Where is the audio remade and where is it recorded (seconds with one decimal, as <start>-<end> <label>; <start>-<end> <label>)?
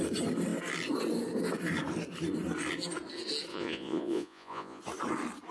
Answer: 0.0-3.5 recorded; 3.5-4.8 remade; 4.8-5.5 recorded